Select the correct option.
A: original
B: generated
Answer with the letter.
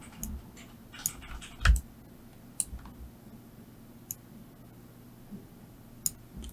A